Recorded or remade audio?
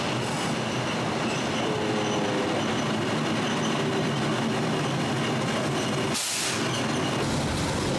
recorded